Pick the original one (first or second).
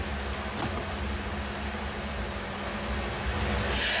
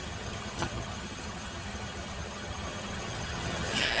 first